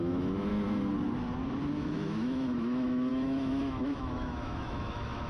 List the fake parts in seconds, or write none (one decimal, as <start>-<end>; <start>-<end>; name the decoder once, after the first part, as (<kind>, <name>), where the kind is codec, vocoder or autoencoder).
0.0-0.5 (autoencoder, DAC-VAE); 1.8-5.3